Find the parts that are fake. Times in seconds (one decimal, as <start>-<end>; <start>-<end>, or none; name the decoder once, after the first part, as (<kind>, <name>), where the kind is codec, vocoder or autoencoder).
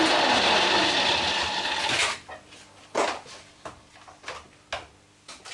2.8-3.9 (vocoder, BigVGAN v2)